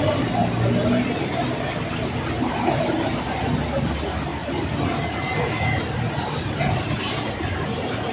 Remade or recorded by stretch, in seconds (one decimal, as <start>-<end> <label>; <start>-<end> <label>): 0.0-8.1 recorded